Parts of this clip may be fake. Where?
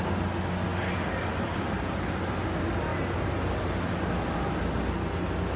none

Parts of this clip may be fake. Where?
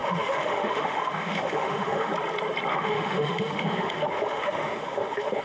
0.0-2.1 (autoencoder, DAC-VAE); 2.7-5.4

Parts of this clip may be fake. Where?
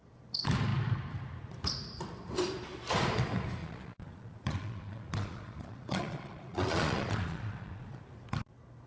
3.6-8.0 (vocoder, Vocos)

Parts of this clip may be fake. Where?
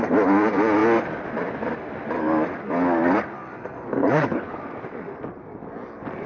4.0-4.6 (codec, HILCodec)